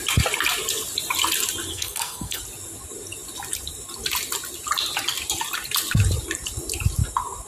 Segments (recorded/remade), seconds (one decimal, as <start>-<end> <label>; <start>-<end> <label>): 0.0-1.7 recorded; 1.7-2.4 remade; 2.4-7.5 recorded